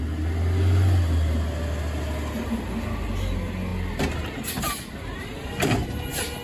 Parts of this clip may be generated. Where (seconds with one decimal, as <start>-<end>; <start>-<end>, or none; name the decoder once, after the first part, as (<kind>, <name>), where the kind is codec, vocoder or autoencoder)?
none